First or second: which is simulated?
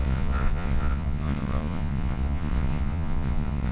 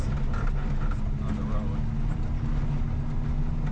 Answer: first